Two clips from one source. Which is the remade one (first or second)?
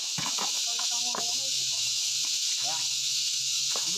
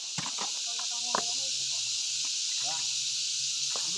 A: first